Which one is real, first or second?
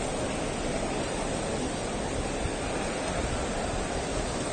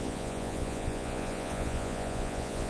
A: first